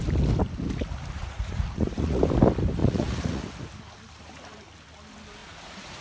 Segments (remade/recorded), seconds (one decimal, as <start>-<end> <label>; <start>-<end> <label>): 0.0-1.2 recorded; 1.2-2.2 remade; 2.2-2.8 recorded; 2.8-3.4 remade; 3.4-5.4 recorded; 5.4-6.0 remade